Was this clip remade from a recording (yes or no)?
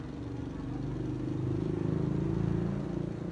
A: no